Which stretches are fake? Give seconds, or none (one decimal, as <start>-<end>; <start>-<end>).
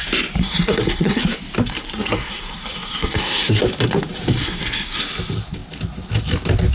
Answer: 0.4-1.2; 1.7-3.6; 4.4-5.0